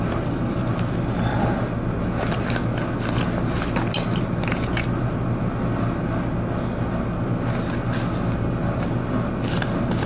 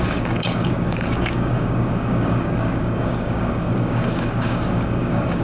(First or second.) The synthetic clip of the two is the second